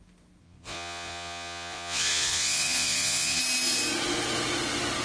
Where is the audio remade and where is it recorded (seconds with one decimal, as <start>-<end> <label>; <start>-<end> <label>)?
0.0-0.4 recorded; 0.4-3.4 remade; 3.4-5.0 recorded

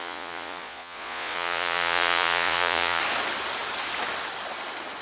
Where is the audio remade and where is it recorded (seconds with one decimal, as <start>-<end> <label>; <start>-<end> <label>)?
0.0-3.0 remade; 3.0-5.0 recorded